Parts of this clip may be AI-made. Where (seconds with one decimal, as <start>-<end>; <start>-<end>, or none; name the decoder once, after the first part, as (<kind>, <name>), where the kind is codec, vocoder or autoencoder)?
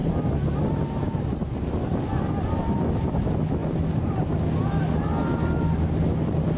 none